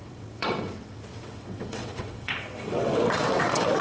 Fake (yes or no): yes